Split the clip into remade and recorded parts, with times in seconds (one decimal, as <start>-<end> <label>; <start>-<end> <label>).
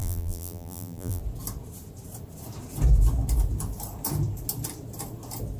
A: 0.0-1.2 remade; 1.2-5.6 recorded